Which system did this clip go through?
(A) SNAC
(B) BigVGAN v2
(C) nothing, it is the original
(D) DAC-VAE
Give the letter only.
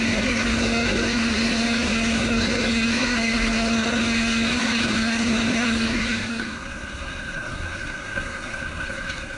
A